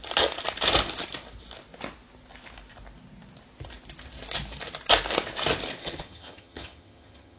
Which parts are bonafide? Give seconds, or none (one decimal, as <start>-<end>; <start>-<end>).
0.0-5.8